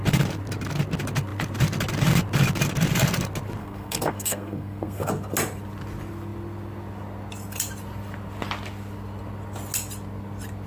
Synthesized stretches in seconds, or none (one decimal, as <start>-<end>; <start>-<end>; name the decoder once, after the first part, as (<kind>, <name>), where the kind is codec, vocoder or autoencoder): 3.6-5.1 (codec, SNAC)